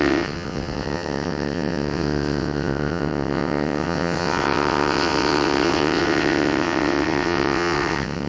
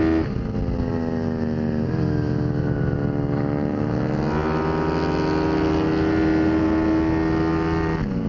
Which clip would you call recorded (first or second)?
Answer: second